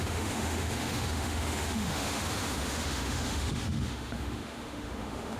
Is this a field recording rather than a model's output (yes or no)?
no